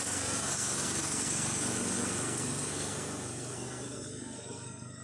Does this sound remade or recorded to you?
remade